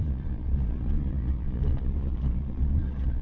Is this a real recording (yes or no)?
no